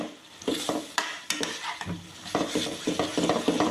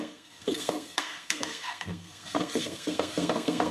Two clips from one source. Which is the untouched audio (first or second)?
first